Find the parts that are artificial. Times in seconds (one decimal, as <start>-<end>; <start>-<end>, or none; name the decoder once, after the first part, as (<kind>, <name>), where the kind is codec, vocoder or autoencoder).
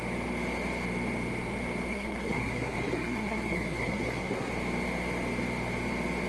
1.9-4.5 (codec, SNAC)